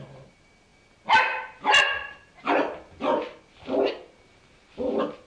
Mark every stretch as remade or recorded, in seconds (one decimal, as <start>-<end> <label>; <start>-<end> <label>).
0.0-5.3 recorded